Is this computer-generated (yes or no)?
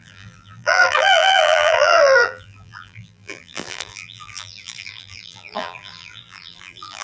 yes